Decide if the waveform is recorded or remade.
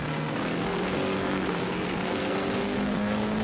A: remade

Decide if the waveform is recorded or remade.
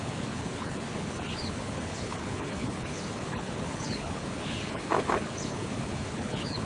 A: remade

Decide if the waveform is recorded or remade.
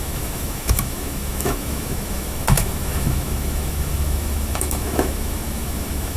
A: remade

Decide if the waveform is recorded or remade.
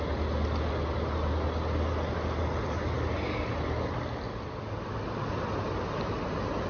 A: recorded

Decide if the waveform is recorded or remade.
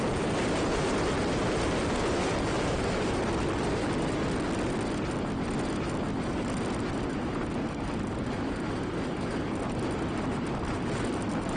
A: recorded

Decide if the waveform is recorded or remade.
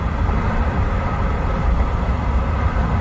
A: remade